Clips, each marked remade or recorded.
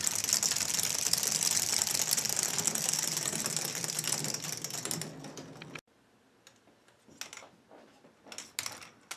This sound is recorded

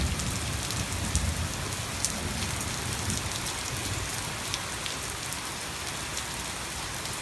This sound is recorded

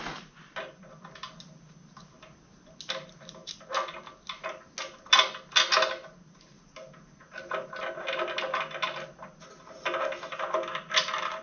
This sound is recorded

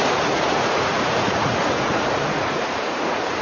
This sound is remade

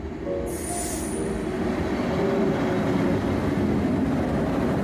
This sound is recorded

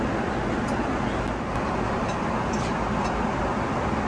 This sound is recorded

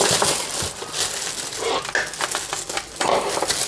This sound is recorded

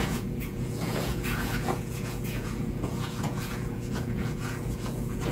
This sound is remade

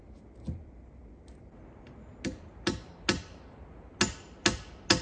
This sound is recorded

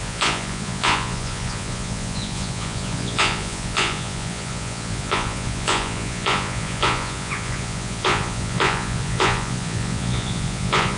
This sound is remade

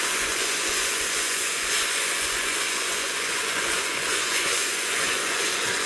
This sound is remade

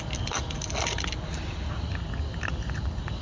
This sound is recorded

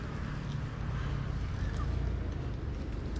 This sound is recorded